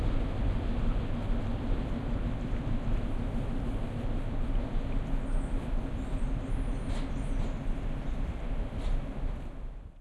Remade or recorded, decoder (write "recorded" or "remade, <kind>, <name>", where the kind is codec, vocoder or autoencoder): recorded